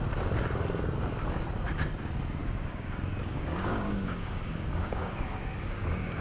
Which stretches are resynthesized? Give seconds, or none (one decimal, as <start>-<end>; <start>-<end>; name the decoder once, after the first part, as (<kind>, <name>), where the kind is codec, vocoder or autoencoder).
2.4-6.2 (codec, DAC)